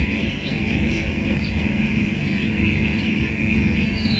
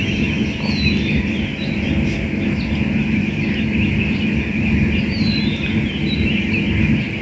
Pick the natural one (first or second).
second